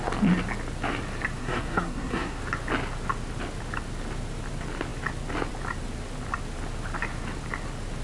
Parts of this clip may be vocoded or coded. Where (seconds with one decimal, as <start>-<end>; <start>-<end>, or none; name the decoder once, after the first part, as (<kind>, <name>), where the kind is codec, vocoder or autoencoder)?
1.4-2.4 (codec, SNAC)